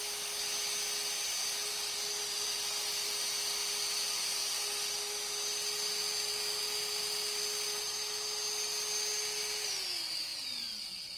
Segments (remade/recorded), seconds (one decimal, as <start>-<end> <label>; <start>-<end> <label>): 0.0-10.3 recorded; 10.3-11.2 remade